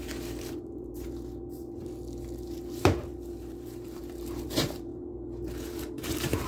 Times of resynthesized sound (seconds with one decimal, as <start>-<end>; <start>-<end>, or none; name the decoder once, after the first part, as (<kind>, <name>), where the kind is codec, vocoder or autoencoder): 0.0-6.5 (vocoder, BigVGAN v2)